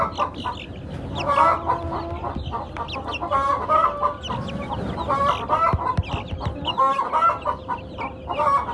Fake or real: real